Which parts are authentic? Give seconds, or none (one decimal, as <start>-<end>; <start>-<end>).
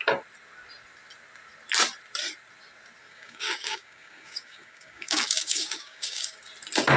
0.0-3.0; 6.4-7.0